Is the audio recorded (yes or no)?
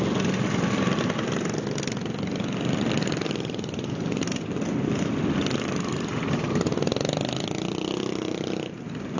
yes